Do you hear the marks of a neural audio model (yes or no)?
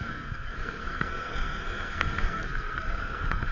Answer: yes